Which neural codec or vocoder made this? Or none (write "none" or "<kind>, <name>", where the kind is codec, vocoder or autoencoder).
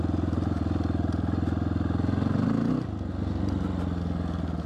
none